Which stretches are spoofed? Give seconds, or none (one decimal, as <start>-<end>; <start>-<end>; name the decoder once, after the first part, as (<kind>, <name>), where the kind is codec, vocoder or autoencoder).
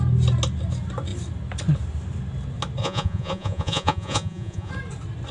2.8-4.7 (vocoder, Vocos)